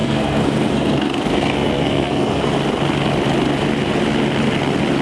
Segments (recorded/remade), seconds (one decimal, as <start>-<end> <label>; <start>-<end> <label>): 0.0-2.5 remade; 2.5-5.0 recorded